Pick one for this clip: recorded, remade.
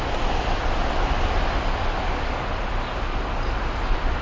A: recorded